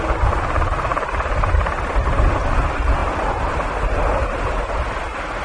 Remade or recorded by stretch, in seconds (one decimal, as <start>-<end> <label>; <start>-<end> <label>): 0.0-0.9 recorded; 0.9-2.4 remade; 2.4-5.4 recorded